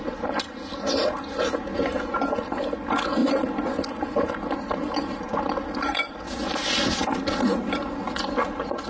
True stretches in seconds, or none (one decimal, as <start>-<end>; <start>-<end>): 0.0-8.9